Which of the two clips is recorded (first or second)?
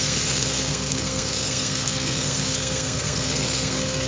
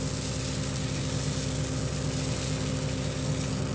second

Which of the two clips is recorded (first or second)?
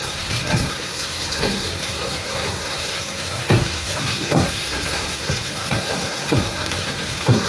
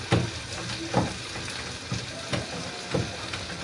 second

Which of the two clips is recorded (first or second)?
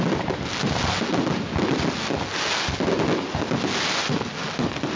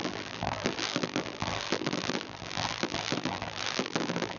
first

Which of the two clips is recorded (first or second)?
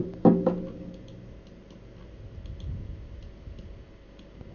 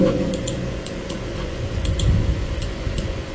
first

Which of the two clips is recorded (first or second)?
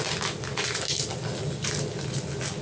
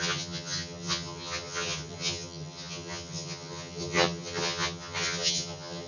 first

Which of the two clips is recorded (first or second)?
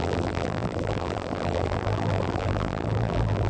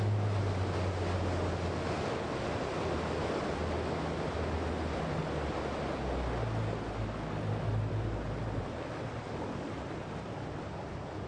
second